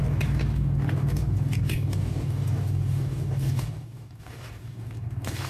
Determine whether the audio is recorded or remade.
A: remade